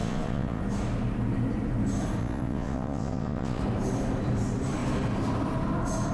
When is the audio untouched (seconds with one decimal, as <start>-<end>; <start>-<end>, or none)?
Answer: 0.6-2.2; 3.6-6.1